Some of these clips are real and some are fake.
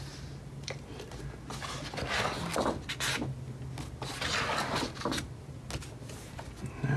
real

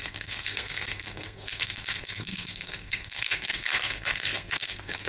fake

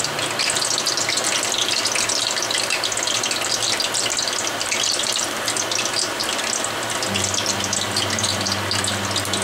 real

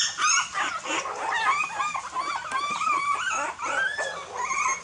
real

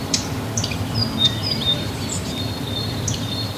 fake